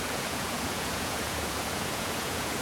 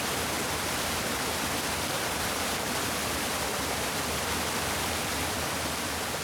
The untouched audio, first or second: second